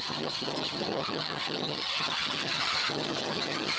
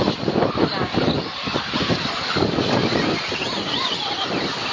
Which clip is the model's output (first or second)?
first